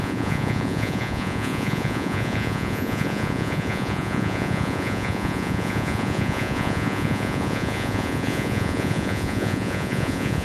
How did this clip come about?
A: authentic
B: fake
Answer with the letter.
B